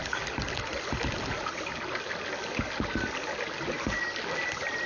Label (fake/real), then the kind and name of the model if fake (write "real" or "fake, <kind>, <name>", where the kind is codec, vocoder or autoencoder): real